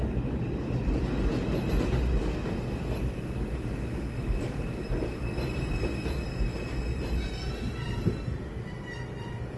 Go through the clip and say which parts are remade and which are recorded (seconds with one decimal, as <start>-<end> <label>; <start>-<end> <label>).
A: 0.0-4.2 recorded; 4.2-6.3 remade; 6.3-6.9 recorded; 6.9-7.5 remade; 7.5-9.6 recorded